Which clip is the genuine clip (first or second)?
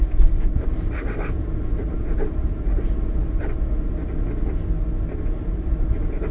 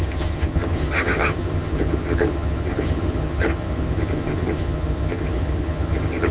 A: first